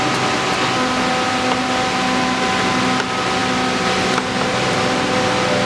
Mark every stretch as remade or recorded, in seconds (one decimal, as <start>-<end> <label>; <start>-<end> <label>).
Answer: 0.0-5.7 recorded